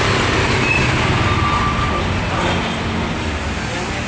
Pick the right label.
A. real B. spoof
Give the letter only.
A